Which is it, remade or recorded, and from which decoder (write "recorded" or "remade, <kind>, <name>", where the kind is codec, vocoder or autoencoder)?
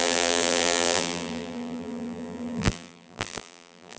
remade, vocoder, BigVGAN v2